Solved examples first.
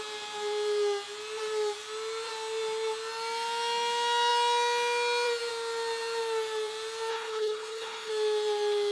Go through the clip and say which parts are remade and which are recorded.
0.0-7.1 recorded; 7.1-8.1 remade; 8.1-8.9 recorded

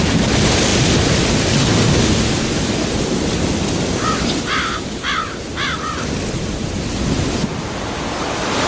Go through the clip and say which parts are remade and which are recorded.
0.0-8.7 recorded

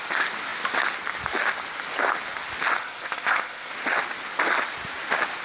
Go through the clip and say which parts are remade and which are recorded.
0.0-2.8 recorded; 2.8-3.7 remade; 3.7-5.4 recorded

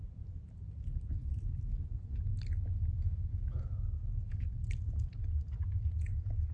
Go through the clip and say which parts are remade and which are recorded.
0.0-6.5 recorded

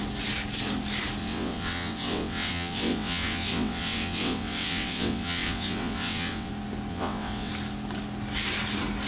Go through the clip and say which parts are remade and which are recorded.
0.0-1.2 recorded; 1.2-6.5 remade; 6.5-6.9 recorded; 6.9-7.5 remade; 7.5-9.1 recorded

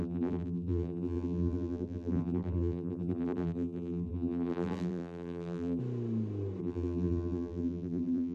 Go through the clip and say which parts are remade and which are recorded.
0.0-5.8 remade; 5.8-6.6 recorded; 6.6-8.3 remade

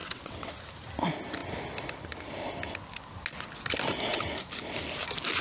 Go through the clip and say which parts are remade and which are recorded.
0.0-0.5 remade; 0.5-5.4 recorded